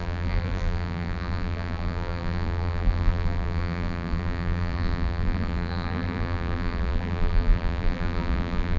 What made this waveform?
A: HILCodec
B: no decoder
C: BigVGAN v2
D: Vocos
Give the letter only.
C